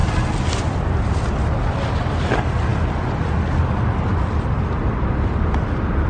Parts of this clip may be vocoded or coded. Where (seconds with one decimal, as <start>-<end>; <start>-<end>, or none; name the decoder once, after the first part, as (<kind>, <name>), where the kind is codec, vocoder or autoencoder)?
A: none